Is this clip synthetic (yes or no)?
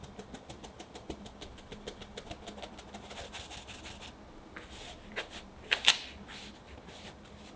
no